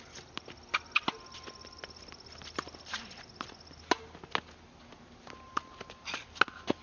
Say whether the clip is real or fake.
real